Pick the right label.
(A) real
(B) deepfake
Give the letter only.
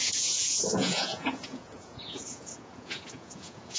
B